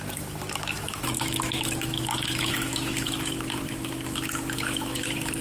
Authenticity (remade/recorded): remade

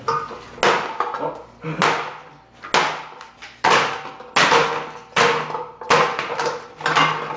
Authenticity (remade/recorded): recorded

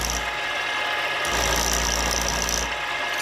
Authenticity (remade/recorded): recorded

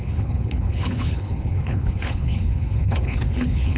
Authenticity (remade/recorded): remade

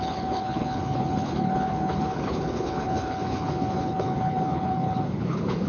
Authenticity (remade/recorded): remade